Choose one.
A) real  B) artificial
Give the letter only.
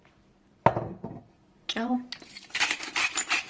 B